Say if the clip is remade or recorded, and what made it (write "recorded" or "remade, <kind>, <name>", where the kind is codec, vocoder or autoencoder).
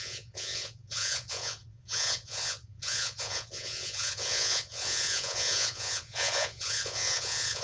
remade, vocoder, Vocos